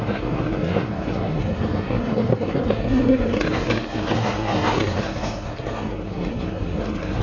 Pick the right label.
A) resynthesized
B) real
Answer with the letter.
A